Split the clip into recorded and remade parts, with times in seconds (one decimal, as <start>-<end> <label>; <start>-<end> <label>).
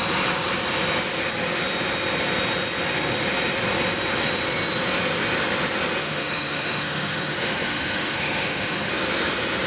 0.0-6.0 recorded; 6.0-8.9 remade; 8.9-9.7 recorded